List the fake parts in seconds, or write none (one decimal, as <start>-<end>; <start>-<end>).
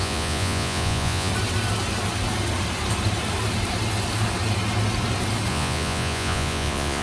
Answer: 0.0-1.3; 5.5-7.0